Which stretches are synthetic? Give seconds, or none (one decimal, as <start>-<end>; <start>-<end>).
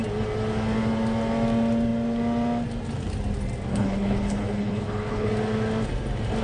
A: 3.7-5.3